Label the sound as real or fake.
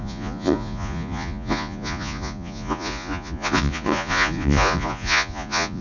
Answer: fake